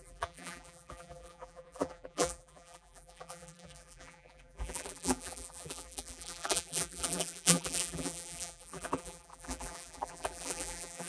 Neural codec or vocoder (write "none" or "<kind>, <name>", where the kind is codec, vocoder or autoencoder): vocoder, BigVGAN v2